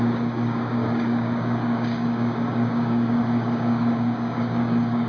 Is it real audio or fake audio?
fake